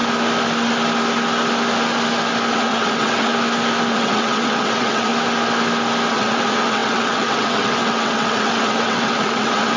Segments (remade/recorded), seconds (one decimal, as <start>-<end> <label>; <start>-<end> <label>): 0.0-2.5 recorded; 2.5-3.3 remade; 3.3-3.9 recorded; 3.9-5.1 remade; 5.1-6.1 recorded; 6.1-9.8 remade